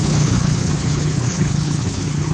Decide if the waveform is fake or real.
fake